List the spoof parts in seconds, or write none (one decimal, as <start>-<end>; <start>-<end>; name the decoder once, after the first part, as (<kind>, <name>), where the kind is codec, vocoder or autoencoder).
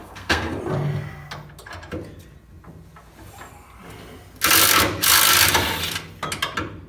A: 0.0-0.6 (codec, SNAC)